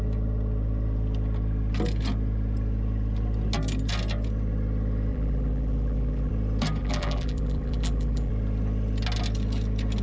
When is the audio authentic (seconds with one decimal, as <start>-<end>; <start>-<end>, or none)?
0.0-5.1; 6.3-6.8; 8.3-10.0

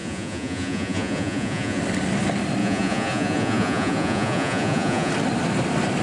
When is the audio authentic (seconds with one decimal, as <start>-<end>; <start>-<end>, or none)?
1.8-2.6; 5.1-6.0

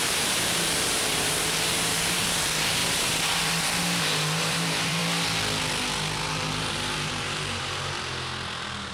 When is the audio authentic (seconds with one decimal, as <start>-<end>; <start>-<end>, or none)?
5.0-6.5; 8.3-8.9

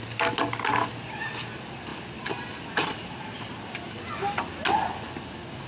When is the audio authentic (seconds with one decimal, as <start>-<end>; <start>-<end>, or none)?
0.0-5.7

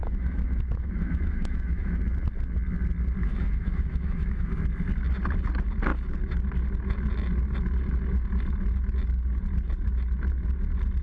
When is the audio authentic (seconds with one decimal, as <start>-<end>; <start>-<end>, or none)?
2.0-3.3; 4.5-11.0

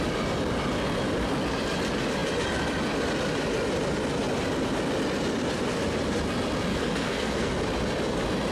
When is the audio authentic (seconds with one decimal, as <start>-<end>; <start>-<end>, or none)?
0.0-6.7; 7.5-8.5

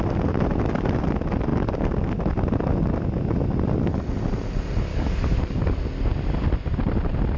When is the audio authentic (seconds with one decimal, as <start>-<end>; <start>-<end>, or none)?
0.0-4.9; 5.6-7.4